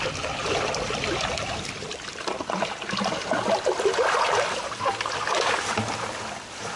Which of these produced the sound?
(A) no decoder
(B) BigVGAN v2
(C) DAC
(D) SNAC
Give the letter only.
A